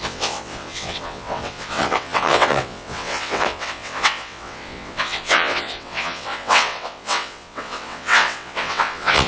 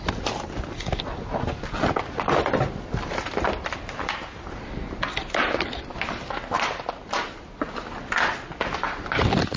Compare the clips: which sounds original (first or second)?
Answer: second